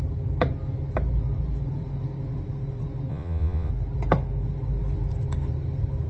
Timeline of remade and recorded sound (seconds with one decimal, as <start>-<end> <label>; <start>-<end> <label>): 0.0-3.1 recorded; 3.1-3.7 remade; 3.7-6.1 recorded